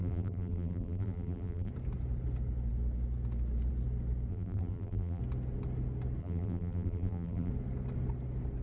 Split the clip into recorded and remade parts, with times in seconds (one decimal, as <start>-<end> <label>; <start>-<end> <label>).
0.0-1.7 remade; 1.7-4.3 recorded; 4.3-5.2 remade; 5.2-6.2 recorded; 6.2-7.5 remade; 7.5-8.6 recorded